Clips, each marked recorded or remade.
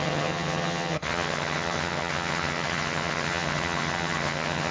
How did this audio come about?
remade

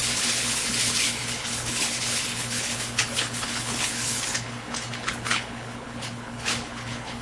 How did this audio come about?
remade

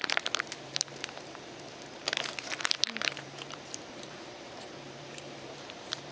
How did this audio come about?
remade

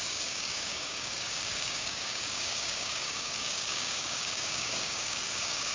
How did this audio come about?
remade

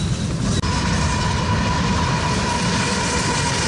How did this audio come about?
recorded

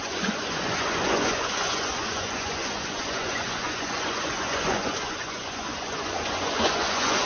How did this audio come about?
remade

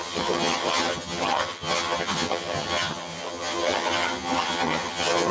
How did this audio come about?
remade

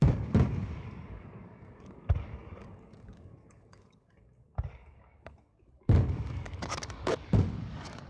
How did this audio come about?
remade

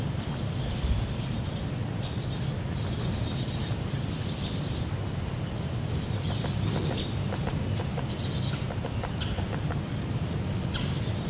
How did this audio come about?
recorded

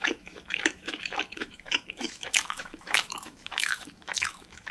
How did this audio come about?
remade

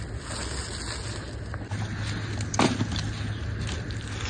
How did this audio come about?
recorded